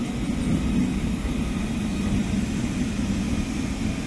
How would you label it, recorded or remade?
recorded